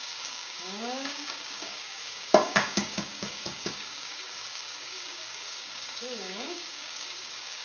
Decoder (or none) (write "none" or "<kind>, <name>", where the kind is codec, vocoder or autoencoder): codec, DAC